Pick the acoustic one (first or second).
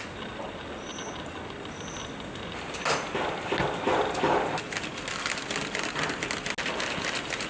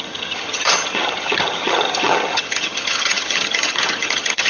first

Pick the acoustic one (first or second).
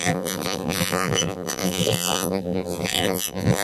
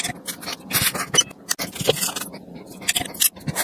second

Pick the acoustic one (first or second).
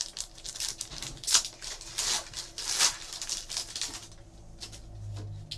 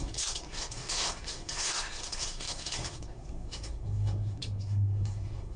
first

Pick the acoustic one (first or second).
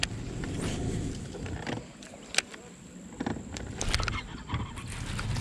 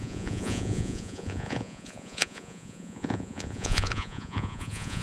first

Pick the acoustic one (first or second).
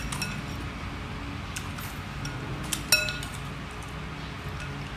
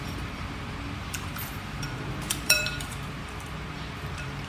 first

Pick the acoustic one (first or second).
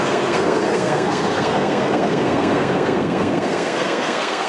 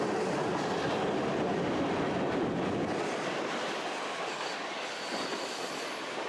second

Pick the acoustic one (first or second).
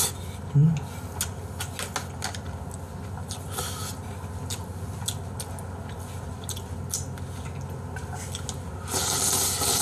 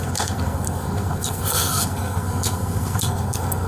first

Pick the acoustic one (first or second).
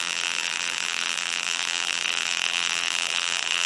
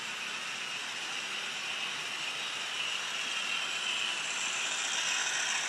second